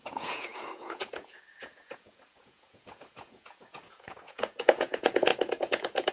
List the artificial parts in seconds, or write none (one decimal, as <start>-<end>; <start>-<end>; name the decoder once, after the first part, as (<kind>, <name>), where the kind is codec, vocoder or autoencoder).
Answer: 0.0-6.1 (vocoder, Vocos)